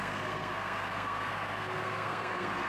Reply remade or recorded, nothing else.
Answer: remade